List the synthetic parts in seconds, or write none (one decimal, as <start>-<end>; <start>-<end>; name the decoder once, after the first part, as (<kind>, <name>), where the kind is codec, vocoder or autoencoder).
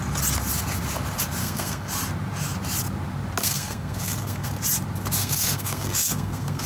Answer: 1.4-1.9 (codec, SNAC); 3.4-4.5; 5.2-6.7